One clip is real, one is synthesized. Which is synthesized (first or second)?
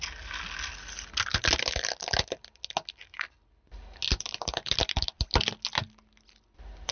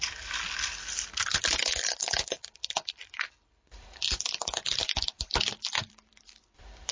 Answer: second